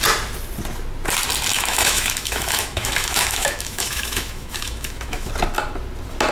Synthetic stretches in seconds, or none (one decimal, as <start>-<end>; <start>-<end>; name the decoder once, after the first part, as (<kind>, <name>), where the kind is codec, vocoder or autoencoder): 1.5-5.3 (autoencoder, DAC-VAE)